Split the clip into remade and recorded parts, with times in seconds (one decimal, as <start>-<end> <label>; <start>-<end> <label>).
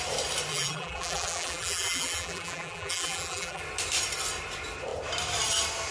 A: 0.0-0.5 recorded; 0.5-3.6 remade; 3.6-5.9 recorded